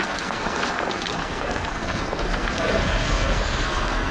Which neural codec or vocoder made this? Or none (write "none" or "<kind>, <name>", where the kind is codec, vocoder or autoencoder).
codec, SNAC